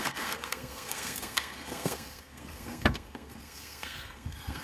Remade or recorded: remade